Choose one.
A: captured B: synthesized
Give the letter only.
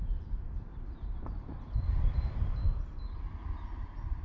A